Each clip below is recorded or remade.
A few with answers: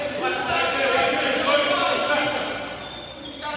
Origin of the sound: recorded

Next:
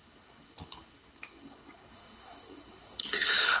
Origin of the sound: remade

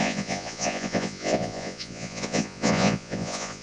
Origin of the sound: remade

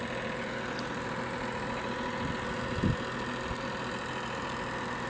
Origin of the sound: recorded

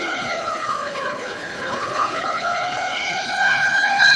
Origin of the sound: remade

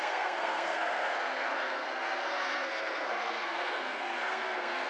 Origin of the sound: remade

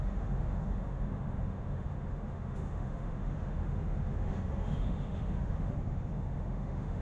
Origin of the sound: remade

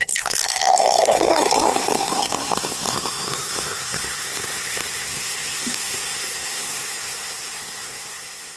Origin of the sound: remade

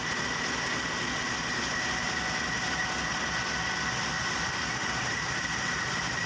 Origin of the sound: recorded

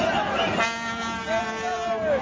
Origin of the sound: recorded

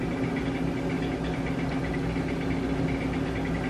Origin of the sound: recorded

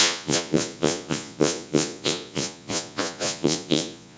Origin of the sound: remade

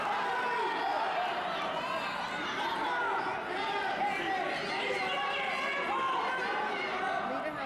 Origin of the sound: recorded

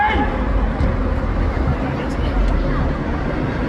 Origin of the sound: recorded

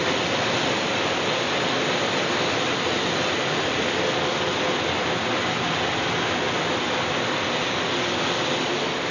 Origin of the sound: recorded